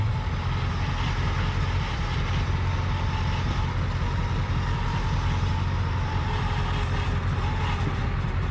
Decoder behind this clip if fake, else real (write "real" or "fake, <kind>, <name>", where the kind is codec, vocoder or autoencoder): real